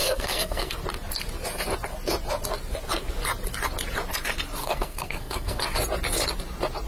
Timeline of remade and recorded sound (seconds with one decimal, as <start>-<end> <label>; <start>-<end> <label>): 0.0-0.7 remade; 0.7-4.6 recorded; 4.6-5.6 remade; 5.6-6.9 recorded